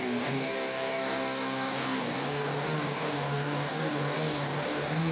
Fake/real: fake